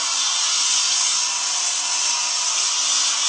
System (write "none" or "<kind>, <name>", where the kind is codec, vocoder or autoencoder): none